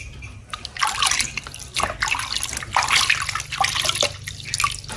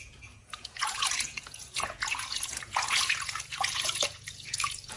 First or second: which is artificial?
second